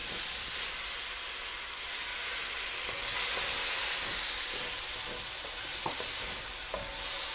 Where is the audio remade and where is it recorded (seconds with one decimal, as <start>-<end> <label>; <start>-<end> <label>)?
0.0-7.3 recorded